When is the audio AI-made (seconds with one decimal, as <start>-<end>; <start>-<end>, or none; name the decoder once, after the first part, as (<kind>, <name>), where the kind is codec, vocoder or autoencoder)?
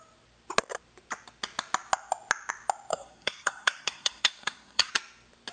2.9-4.9 (codec, SNAC)